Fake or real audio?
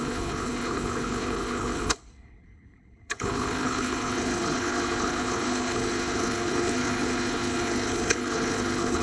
fake